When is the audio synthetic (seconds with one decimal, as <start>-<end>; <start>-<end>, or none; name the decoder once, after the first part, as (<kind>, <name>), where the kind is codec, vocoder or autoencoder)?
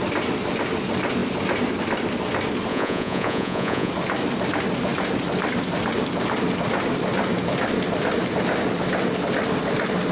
2.7-3.9 (vocoder, Vocos)